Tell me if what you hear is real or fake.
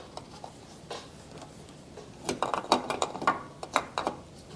real